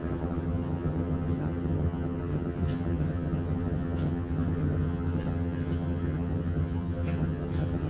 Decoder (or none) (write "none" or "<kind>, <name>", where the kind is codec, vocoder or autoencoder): vocoder, HiFi-GAN